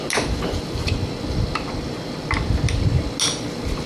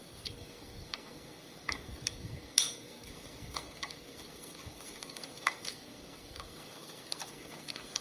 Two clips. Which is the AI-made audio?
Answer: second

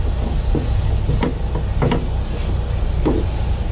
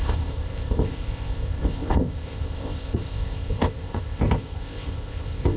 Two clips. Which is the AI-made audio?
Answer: second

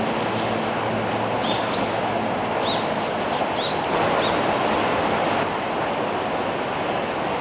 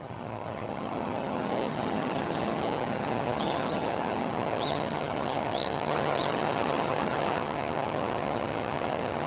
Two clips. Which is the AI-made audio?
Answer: second